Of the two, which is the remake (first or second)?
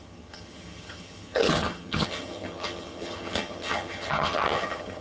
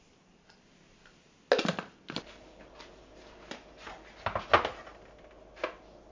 first